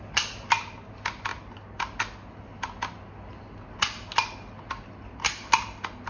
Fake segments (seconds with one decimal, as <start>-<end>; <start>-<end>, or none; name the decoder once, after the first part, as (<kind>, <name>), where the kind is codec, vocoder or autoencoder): none